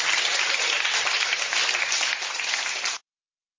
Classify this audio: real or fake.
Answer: real